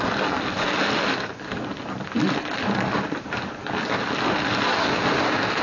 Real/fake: real